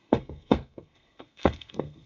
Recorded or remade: remade